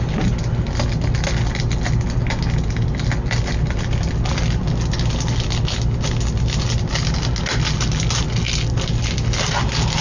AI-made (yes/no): no